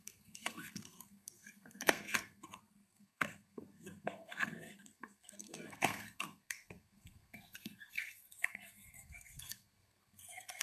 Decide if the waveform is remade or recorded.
remade